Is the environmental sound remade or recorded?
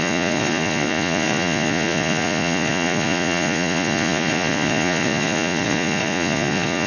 remade